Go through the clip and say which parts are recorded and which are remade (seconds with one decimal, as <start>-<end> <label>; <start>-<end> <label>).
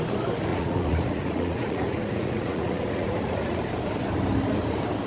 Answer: 0.0-0.5 recorded; 0.5-3.6 remade; 3.6-5.1 recorded